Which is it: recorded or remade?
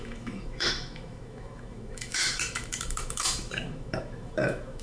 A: remade